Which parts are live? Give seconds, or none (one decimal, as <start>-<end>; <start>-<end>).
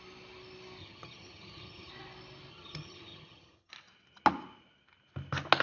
0.0-0.8; 1.9-2.5; 3.7-5.6